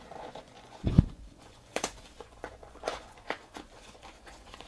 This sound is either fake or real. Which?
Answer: fake